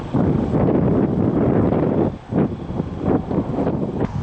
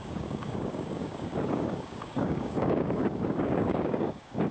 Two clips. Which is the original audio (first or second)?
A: first